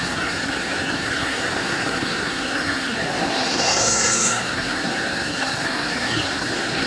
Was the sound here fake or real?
fake